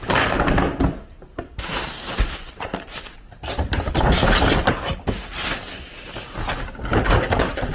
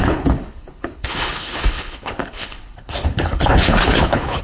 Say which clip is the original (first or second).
first